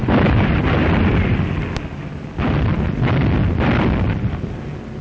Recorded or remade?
recorded